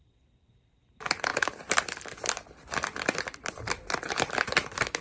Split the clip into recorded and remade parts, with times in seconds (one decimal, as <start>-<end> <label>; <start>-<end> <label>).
0.0-1.3 recorded; 1.3-4.3 remade; 4.3-5.0 recorded